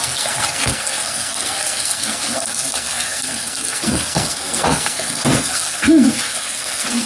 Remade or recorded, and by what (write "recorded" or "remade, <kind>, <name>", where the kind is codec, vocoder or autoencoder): remade, codec, SNAC